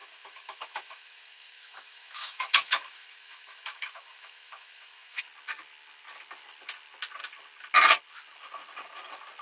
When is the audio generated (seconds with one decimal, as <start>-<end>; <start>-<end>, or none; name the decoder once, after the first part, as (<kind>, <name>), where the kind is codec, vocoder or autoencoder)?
0.0-5.2 (autoencoder, DAC-VAE)